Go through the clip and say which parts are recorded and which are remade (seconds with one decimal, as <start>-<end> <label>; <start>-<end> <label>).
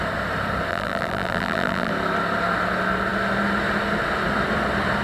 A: 0.0-0.7 recorded; 0.7-1.9 remade; 1.9-5.0 recorded